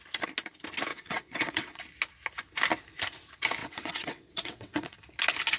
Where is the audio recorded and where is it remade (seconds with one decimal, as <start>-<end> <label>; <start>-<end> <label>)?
0.0-0.9 recorded; 0.9-1.8 remade; 1.8-3.6 recorded; 3.6-5.0 remade; 5.0-5.6 recorded